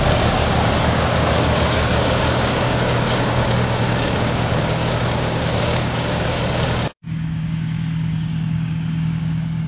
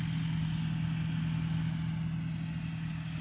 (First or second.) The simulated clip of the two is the first